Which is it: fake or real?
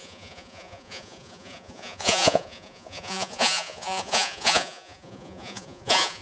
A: fake